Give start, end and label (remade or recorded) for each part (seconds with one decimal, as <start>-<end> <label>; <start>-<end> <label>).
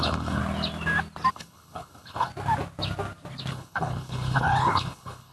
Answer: 0.0-0.4 remade; 0.4-1.3 recorded; 1.3-2.3 remade; 2.3-3.5 recorded; 3.5-5.3 remade